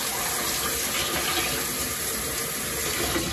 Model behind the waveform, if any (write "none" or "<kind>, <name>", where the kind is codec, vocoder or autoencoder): none